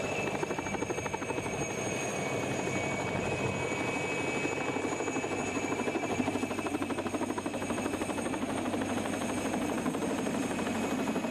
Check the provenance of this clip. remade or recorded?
recorded